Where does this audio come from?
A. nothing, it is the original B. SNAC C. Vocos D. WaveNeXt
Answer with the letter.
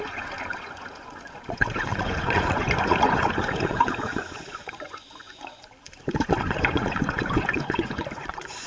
C